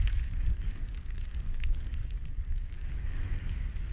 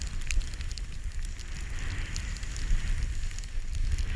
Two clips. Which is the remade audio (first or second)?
first